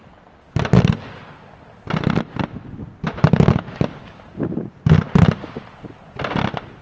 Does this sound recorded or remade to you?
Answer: recorded